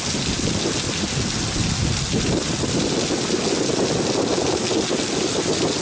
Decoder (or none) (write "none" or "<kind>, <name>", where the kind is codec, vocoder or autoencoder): none